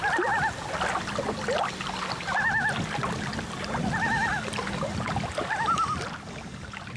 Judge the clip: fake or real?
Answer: real